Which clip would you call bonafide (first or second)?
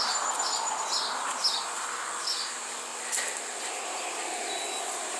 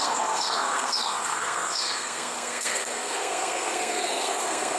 first